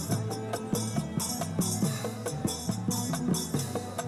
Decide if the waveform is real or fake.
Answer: real